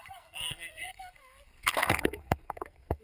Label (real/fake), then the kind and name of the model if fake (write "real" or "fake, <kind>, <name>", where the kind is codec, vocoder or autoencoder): fake, codec, SNAC